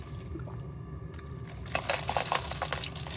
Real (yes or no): yes